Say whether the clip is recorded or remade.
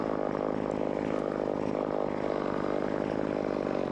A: recorded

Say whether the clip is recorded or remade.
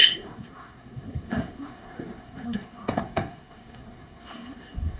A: remade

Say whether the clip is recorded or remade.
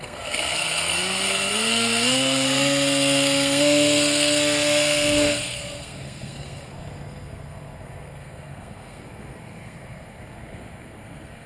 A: remade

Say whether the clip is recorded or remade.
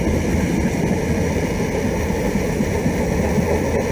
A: recorded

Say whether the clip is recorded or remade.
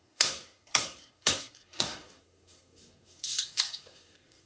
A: remade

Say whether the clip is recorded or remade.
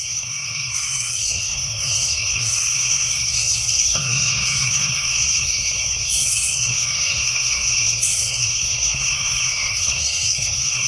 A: remade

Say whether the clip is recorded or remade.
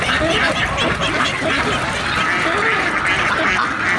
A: recorded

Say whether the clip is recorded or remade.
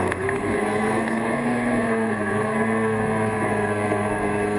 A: remade